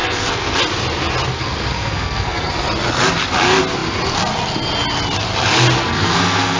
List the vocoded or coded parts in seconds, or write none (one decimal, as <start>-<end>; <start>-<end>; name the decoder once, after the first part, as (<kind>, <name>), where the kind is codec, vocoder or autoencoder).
0.0-0.6 (codec, SNAC); 1.3-2.5; 5.8-6.6